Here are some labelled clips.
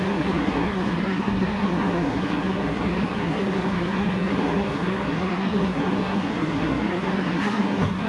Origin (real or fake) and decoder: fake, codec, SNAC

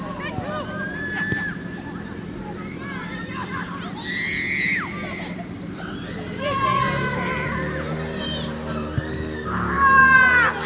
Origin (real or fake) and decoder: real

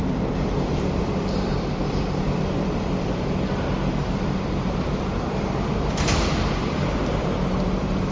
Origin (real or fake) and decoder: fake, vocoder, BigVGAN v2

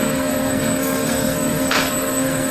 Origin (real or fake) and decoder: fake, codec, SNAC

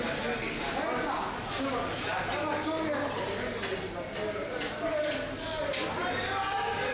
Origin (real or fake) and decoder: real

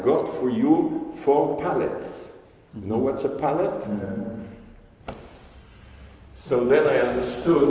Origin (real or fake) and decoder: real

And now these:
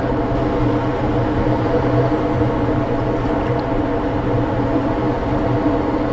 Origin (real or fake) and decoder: real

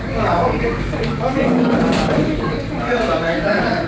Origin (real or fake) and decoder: fake, codec, DAC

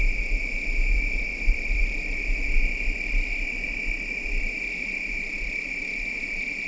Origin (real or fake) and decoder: real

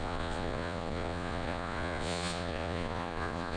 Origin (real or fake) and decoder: fake, vocoder, Vocos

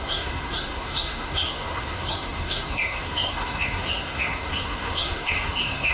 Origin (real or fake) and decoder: fake, codec, SNAC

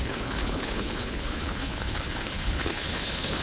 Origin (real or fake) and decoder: fake, codec, HILCodec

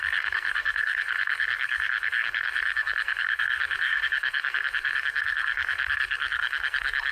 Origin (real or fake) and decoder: fake, codec, SNAC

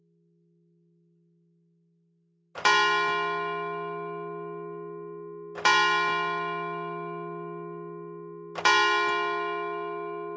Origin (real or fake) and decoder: real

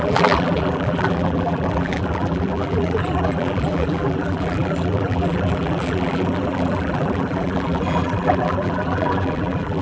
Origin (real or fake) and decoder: fake, vocoder, BigVGAN v2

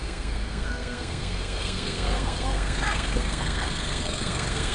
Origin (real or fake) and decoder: fake, codec, SNAC